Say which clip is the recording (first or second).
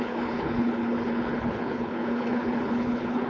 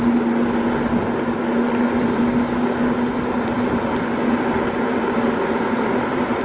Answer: second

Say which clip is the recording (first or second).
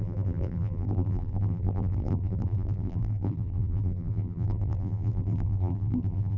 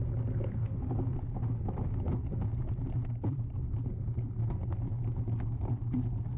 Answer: second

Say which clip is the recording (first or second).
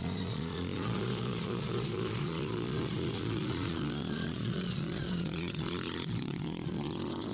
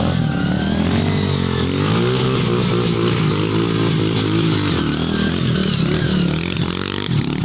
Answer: second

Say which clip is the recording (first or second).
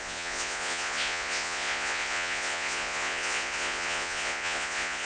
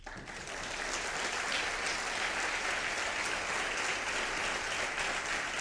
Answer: second